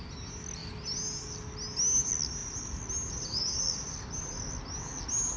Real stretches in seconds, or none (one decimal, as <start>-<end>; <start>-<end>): 0.0-5.4

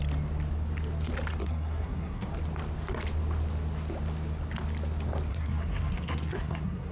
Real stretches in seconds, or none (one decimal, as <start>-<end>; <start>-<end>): 0.0-1.4; 2.3-5.3

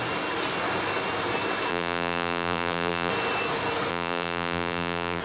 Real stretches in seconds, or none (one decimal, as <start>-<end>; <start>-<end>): 0.0-1.7; 3.1-3.9

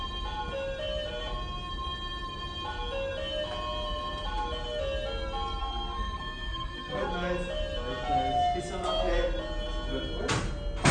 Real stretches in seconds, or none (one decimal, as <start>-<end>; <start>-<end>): 0.0-5.6; 7.1-10.9

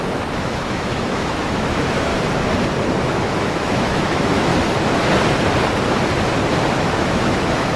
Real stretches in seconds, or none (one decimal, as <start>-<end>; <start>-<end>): 2.1-3.0; 4.5-6.7

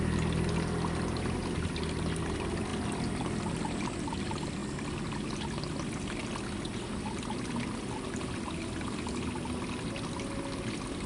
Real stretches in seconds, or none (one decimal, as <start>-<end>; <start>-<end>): 0.0-11.1

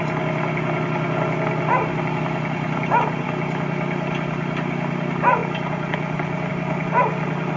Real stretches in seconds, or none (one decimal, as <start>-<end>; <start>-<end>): 0.0-7.6

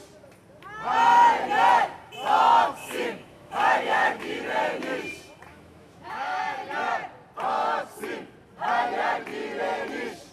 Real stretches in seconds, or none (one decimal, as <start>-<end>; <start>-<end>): 0.0-2.8; 4.4-5.5; 6.4-10.3